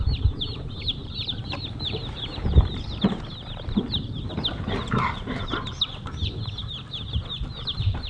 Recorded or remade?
remade